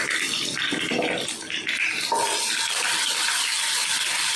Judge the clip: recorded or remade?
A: recorded